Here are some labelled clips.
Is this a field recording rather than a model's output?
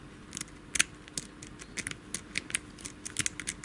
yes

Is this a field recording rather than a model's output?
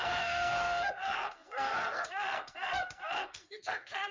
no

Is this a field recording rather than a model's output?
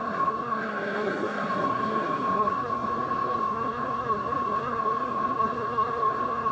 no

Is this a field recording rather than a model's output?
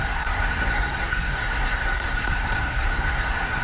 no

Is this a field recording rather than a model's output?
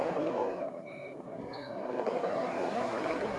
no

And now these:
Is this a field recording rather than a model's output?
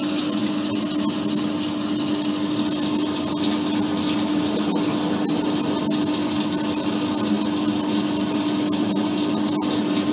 yes